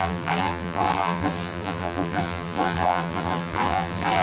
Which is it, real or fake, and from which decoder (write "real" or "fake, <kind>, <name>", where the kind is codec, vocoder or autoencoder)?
fake, vocoder, BigVGAN v2